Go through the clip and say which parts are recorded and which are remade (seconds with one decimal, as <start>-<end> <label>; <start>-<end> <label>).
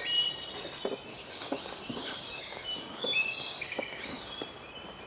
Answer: 0.0-1.1 recorded; 1.1-4.2 remade; 4.2-5.1 recorded